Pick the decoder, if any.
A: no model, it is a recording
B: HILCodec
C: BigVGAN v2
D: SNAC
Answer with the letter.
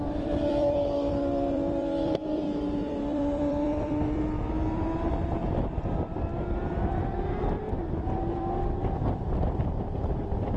C